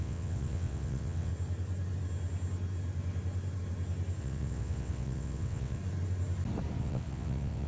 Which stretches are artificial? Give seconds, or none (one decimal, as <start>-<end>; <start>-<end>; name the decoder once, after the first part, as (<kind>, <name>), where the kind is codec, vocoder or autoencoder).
0.0-1.3 (vocoder, WaveNeXt); 4.2-5.8; 6.8-7.7